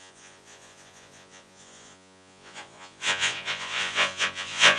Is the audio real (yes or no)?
no